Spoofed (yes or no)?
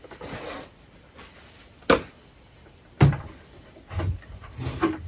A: no